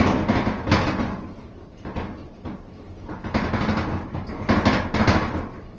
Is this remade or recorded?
recorded